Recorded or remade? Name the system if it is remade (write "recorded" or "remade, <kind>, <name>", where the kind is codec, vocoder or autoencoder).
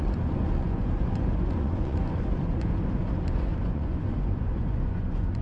remade, vocoder, Vocos